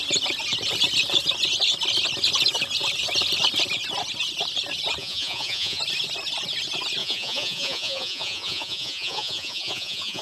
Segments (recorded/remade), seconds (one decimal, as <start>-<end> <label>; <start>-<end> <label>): 0.0-5.0 recorded; 5.0-5.8 remade; 5.8-7.0 recorded; 7.0-10.2 remade